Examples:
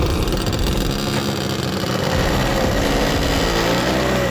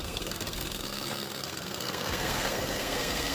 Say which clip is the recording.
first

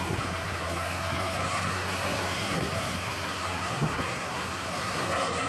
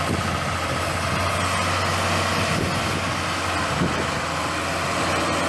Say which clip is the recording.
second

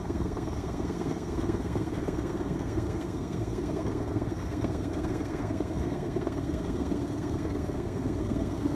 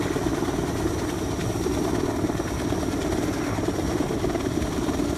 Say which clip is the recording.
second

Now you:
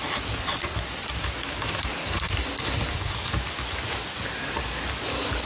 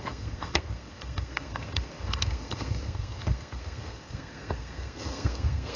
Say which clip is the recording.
first